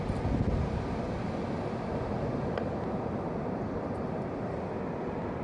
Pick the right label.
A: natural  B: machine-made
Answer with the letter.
A